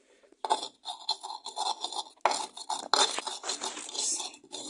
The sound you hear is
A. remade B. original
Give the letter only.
B